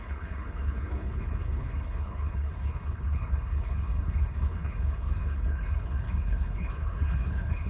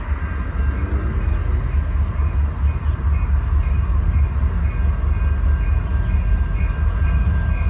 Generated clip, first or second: first